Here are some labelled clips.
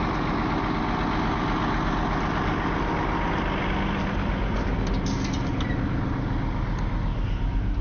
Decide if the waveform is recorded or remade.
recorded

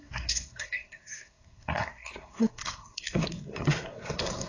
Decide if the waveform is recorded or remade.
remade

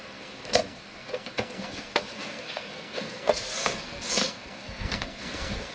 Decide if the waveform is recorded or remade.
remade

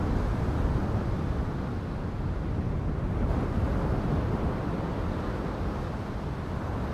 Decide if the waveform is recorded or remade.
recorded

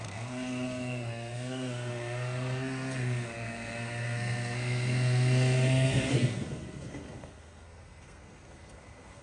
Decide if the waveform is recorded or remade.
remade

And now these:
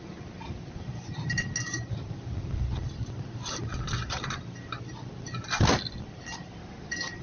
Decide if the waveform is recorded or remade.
recorded